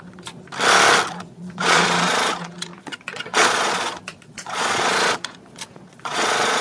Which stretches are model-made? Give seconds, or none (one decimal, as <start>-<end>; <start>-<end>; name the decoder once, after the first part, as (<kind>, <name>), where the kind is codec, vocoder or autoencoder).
0.0-0.4 (vocoder, Vocos); 1.1-6.6